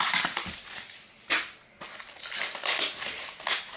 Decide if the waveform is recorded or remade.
recorded